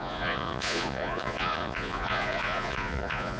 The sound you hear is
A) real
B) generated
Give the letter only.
B